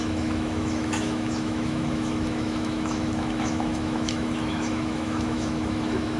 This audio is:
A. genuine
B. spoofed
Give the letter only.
B